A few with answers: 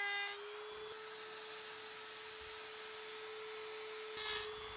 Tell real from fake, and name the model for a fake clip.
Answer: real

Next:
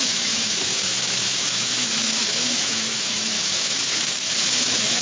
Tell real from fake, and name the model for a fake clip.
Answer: fake, autoencoder, DAC-VAE